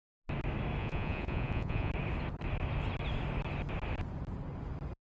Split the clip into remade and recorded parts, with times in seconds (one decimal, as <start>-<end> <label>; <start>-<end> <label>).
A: 0.0-0.8 recorded; 0.8-1.9 remade; 1.9-5.0 recorded